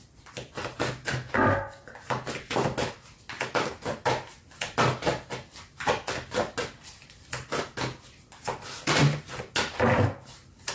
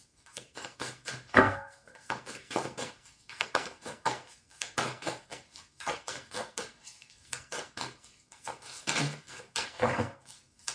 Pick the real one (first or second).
first